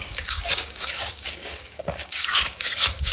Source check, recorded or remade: remade